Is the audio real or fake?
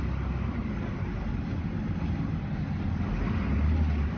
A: real